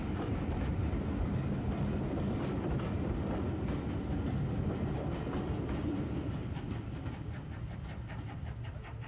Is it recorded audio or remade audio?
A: recorded